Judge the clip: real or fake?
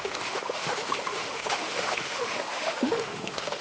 fake